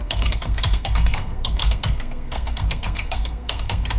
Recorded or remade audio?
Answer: remade